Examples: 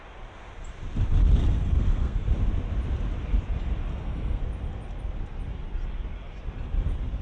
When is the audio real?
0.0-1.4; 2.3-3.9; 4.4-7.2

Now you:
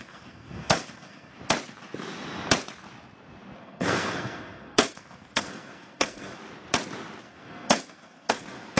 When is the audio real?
1.3-3.6; 6.4-7.2

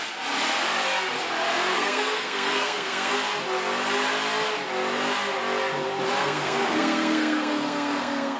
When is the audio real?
0.0-1.7; 3.1-6.2

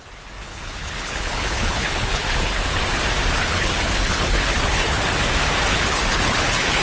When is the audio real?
0.0-0.4; 2.8-3.4; 5.0-5.7